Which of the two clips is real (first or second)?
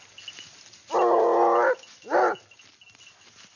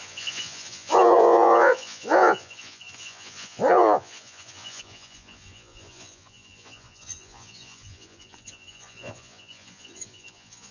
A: first